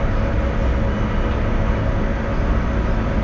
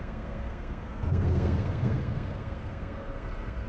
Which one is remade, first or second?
second